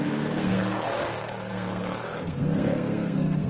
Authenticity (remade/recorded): remade